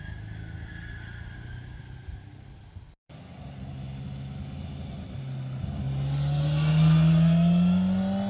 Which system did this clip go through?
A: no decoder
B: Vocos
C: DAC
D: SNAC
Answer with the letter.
A